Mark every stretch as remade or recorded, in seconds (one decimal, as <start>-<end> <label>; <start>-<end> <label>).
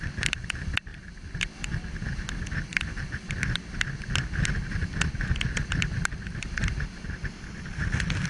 0.0-8.3 recorded